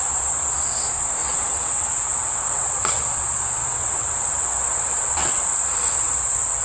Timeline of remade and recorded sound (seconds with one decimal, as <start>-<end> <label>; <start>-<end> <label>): 0.0-1.2 recorded; 1.2-3.0 remade; 3.0-3.6 recorded; 3.6-6.6 remade